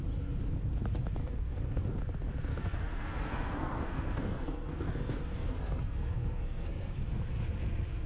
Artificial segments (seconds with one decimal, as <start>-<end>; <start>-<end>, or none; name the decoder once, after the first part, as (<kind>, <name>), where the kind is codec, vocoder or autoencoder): 1.2-2.0 (codec, SNAC); 2.5-7.0